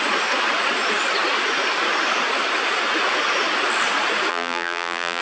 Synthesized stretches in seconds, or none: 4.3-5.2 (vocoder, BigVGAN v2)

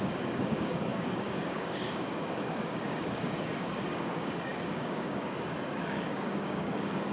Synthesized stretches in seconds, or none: 0.0-7.1 (codec, DAC)

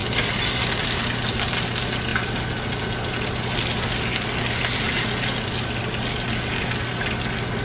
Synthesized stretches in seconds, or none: 0.0-0.5 (vocoder, BigVGAN v2)

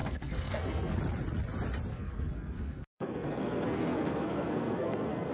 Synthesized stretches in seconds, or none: 0.0-1.0 (codec, SNAC); 1.9-5.3

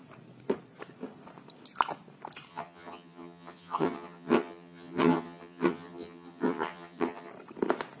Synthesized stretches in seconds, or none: 2.5-7.3 (vocoder, HiFi-GAN)

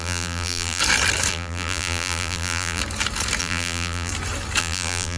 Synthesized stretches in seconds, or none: 0.0-0.8 (vocoder, BigVGAN v2); 1.3-2.8; 3.4-4.1; 4.6-5.2